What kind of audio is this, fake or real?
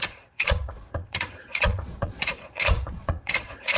fake